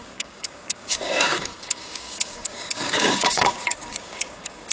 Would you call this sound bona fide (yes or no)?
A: no